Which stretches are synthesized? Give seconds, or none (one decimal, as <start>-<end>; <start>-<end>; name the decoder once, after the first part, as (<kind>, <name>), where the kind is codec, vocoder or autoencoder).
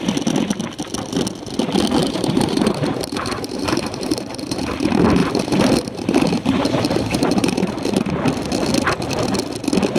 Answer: 2.0-4.7 (vocoder, BigVGAN v2); 5.2-7.7